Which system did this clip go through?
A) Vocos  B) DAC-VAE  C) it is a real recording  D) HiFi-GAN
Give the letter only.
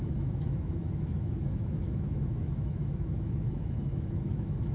B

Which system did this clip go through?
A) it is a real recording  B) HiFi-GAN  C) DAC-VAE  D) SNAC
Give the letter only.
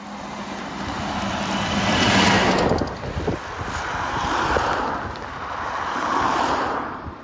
A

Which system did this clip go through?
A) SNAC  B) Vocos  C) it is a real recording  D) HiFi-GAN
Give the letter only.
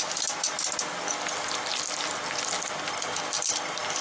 C